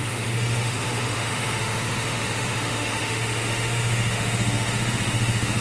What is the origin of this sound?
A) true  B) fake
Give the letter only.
B